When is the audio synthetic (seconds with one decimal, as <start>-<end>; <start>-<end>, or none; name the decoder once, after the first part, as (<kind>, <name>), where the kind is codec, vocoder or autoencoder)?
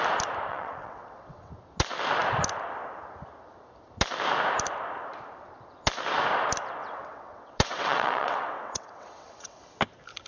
0.5-1.5 (vocoder, WaveNeXt); 6.8-9.6